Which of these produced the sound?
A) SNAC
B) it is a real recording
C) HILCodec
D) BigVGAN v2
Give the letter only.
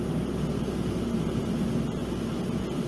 B